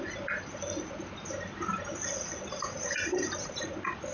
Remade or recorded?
recorded